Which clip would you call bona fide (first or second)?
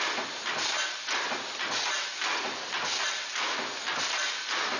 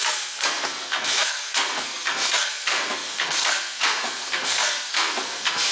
first